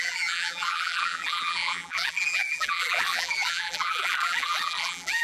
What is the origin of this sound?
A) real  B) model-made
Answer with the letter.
B